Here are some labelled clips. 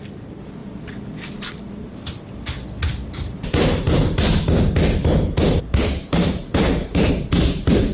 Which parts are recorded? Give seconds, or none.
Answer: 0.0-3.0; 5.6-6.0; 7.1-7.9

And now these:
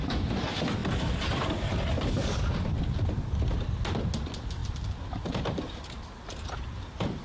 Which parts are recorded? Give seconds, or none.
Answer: 0.0-4.6; 6.3-7.2

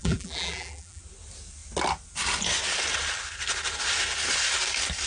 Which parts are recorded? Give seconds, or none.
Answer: 1.0-5.1

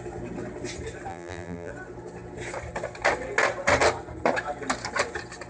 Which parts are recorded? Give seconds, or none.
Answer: 0.0-1.1; 1.7-5.5

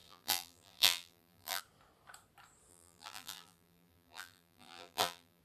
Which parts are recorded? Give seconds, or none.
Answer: 1.6-2.7

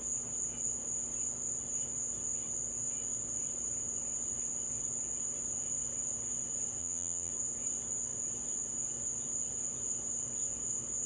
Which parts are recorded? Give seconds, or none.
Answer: 0.0-6.8; 7.3-11.1